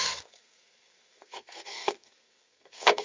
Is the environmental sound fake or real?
fake